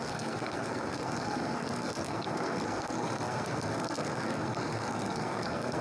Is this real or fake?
fake